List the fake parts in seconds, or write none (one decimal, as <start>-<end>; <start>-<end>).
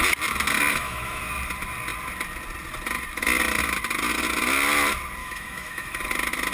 0.7-1.2; 5.2-6.0